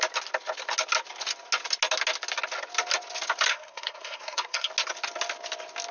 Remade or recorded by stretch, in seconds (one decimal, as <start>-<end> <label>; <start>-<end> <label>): 0.0-3.5 recorded; 3.5-4.7 remade; 4.7-5.9 recorded